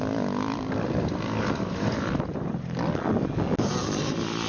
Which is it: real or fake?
real